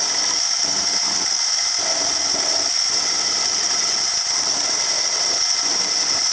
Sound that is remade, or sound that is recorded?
recorded